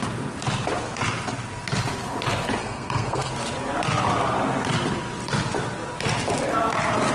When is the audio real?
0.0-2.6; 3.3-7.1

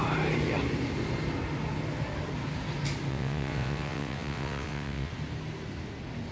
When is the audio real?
0.0-3.1; 5.1-6.3

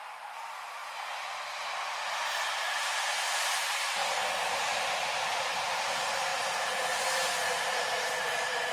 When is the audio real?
0.8-2.5; 4.0-4.8; 6.3-7.4

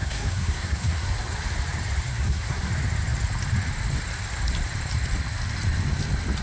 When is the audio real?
1.1-2.1; 2.7-6.4

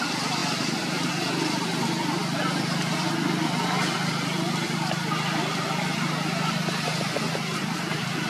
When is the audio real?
0.0-8.3

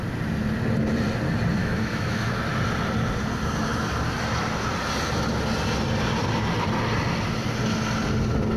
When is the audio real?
0.0-1.6; 2.4-8.6

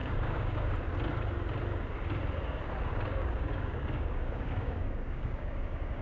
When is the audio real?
0.7-3.1

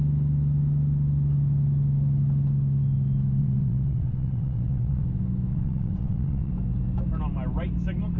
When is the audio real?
0.0-3.4; 5.0-5.5; 6.5-8.2